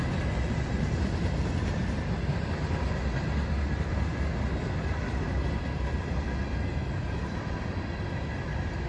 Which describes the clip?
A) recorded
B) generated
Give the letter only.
A